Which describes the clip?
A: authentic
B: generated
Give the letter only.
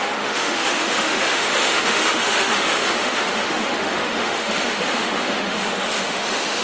B